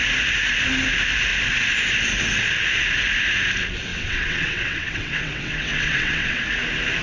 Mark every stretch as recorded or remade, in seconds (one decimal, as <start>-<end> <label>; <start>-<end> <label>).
0.0-3.9 recorded; 3.9-6.5 remade; 6.5-7.0 recorded